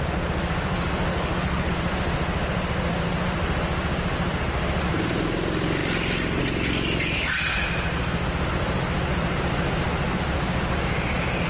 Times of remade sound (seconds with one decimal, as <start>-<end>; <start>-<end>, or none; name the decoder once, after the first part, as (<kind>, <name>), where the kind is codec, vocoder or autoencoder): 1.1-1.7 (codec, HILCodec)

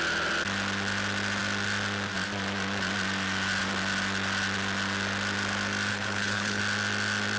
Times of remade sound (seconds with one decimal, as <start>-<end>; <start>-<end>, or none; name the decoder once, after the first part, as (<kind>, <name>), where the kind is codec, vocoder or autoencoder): 5.9-6.6 (codec, HILCodec)

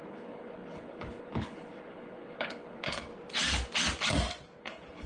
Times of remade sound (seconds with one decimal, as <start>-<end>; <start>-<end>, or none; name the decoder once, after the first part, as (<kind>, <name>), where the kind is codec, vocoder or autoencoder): 0.0-3.1 (codec, HILCodec); 4.6-5.1

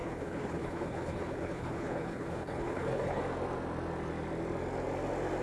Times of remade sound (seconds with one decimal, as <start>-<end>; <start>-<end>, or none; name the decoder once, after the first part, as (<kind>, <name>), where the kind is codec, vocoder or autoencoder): 0.0-3.2 (codec, HILCodec)